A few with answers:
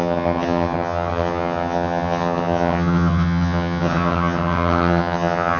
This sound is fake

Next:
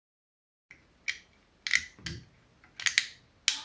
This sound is real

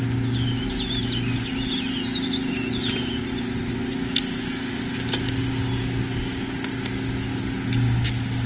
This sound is real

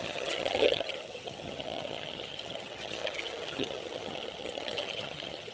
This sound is fake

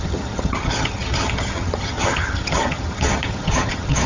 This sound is fake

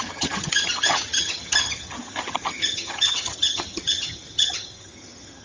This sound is fake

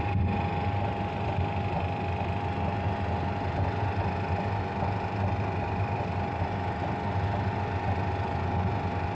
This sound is real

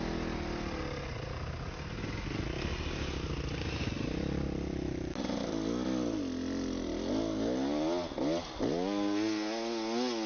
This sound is real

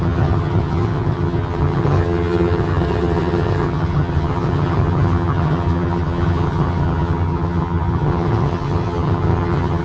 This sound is fake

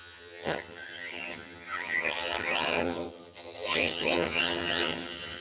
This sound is fake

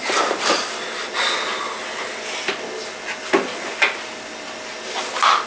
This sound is real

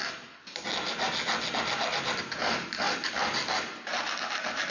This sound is real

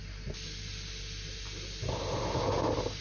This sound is real